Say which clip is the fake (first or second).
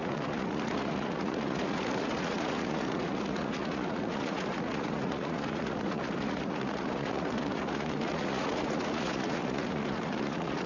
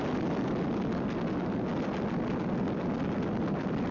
first